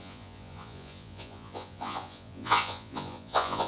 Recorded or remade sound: remade